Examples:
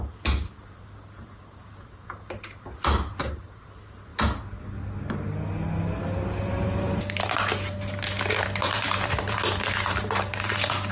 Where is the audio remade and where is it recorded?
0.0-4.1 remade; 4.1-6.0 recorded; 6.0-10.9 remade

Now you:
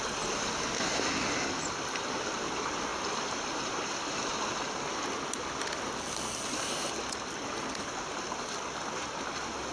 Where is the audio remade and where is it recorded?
0.0-9.7 recorded